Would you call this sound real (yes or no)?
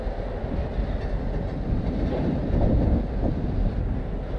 yes